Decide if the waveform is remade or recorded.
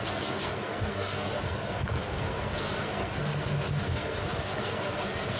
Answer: remade